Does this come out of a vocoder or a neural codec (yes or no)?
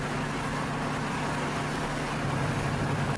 no